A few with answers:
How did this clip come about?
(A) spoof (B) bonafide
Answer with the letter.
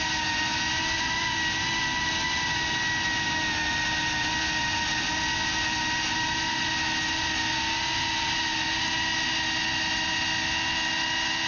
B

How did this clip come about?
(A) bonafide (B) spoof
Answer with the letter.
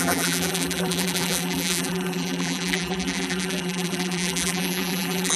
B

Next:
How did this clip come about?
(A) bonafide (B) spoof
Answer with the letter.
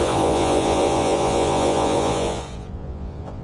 B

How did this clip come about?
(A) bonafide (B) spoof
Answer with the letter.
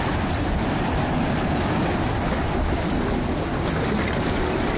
B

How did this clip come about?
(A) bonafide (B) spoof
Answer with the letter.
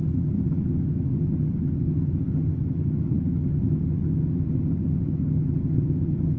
B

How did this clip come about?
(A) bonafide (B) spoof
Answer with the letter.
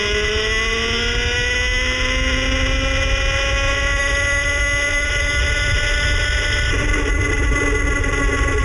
A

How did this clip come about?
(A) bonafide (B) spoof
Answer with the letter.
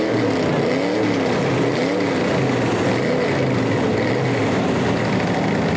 A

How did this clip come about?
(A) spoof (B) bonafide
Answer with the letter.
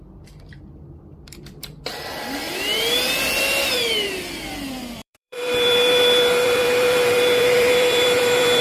A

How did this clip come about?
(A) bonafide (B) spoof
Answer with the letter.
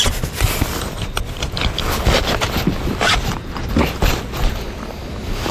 A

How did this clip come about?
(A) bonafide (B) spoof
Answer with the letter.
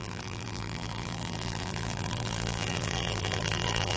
B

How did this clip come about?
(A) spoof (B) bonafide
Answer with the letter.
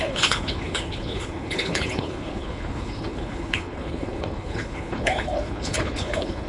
A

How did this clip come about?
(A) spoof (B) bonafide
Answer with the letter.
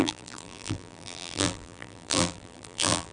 A